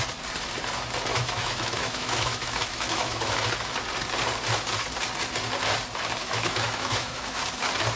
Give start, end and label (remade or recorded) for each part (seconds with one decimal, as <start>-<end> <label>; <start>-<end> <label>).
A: 0.0-1.1 recorded; 1.1-3.3 remade; 3.3-6.2 recorded; 6.2-7.4 remade; 7.4-8.0 recorded